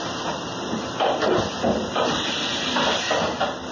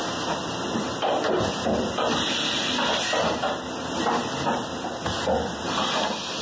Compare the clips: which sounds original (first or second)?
second